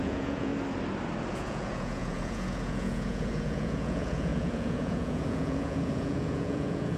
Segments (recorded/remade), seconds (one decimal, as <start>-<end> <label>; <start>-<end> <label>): 0.0-0.5 remade; 0.5-1.3 recorded; 1.3-7.0 remade